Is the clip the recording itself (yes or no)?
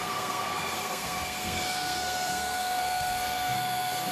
no